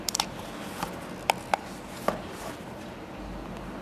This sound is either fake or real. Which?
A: real